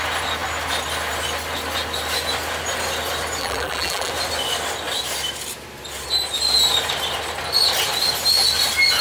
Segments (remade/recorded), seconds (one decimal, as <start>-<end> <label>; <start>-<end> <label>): 0.0-3.4 recorded; 3.4-4.1 remade; 4.1-9.0 recorded